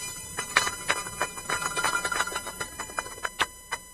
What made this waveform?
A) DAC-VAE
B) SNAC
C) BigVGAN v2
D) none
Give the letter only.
D